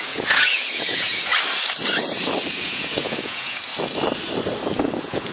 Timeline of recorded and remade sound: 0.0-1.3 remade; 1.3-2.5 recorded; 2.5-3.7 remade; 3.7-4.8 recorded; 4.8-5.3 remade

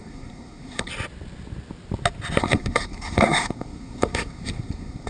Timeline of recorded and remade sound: 0.0-0.9 remade; 0.9-2.4 recorded; 2.4-5.1 remade